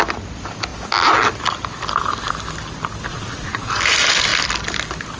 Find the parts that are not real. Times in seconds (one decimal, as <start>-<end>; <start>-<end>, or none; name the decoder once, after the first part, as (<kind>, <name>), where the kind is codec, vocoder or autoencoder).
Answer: 3.1-3.7 (vocoder, Vocos)